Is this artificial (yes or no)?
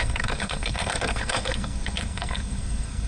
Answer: yes